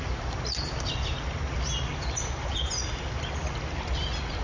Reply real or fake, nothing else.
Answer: real